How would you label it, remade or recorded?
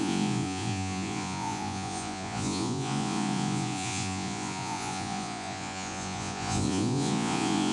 remade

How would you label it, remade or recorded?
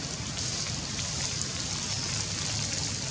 recorded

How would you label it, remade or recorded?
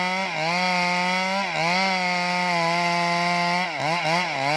recorded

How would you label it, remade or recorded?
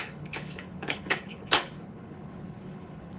remade